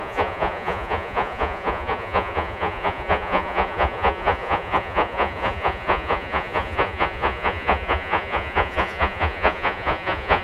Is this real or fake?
fake